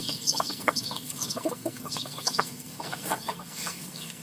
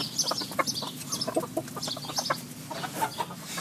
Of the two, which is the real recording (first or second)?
second